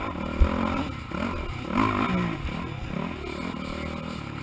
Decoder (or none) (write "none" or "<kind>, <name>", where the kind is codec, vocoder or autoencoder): none